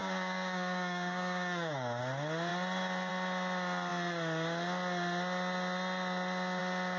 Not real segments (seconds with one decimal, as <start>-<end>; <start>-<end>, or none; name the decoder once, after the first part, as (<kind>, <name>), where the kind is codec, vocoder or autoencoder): 0.0-2.0 (codec, DAC)